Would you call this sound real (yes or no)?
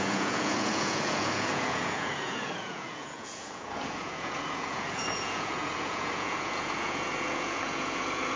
no